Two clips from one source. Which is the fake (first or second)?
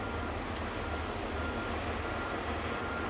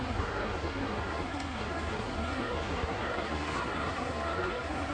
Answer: second